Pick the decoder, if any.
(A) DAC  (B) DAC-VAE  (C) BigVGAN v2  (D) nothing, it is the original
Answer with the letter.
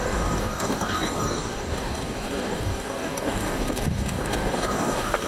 A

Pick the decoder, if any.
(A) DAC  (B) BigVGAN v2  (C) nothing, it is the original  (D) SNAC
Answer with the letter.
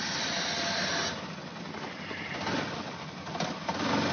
C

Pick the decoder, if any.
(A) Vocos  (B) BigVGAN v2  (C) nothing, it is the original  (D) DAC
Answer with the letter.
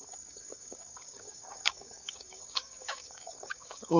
D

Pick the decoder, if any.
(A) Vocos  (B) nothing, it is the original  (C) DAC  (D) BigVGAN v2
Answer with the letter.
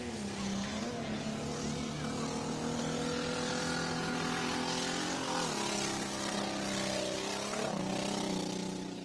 B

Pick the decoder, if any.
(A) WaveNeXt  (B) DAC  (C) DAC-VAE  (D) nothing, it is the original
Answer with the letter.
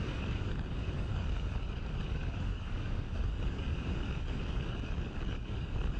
B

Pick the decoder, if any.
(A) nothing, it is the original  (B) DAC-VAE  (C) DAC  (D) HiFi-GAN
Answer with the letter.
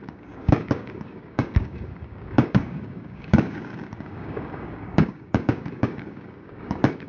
C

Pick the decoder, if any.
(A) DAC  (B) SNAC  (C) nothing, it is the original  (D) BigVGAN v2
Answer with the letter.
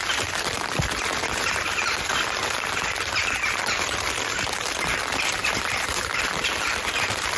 C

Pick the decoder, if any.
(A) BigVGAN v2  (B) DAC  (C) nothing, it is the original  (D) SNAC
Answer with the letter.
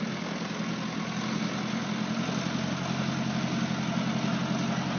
C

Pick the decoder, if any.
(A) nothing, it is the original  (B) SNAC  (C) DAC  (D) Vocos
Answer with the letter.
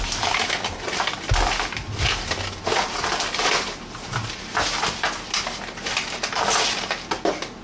A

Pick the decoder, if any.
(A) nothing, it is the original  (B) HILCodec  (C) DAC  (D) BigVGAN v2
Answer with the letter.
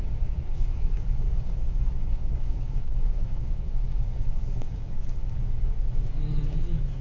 C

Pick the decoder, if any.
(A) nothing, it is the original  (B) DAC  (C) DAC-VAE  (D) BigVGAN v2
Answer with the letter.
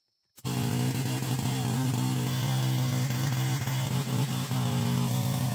A